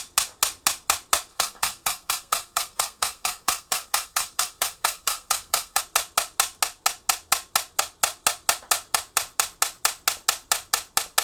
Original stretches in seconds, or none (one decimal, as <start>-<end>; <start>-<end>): 0.0-1.3; 5.8-11.2